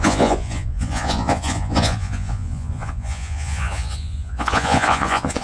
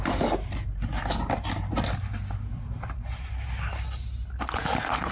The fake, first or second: first